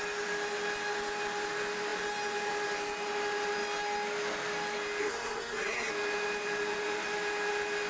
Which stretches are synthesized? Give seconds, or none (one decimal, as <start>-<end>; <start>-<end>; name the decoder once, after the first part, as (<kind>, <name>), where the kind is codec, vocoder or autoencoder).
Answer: 5.0-5.9 (codec, SNAC)